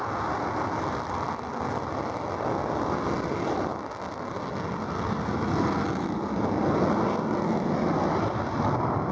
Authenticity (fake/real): real